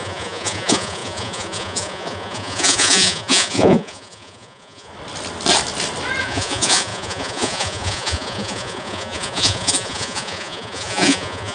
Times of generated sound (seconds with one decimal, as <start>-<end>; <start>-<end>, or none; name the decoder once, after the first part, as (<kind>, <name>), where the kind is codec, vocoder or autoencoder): 0.0-4.9 (vocoder, Vocos); 6.2-11.5